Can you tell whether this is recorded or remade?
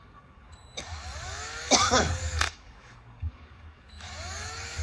remade